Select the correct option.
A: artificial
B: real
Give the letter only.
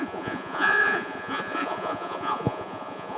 A